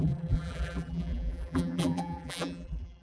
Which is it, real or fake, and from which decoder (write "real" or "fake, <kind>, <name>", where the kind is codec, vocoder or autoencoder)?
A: fake, vocoder, BigVGAN v2